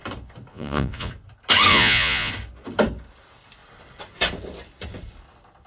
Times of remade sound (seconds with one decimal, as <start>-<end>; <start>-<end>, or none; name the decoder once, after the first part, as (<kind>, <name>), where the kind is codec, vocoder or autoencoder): 0.5-1.1 (vocoder, Vocos); 1.7-2.3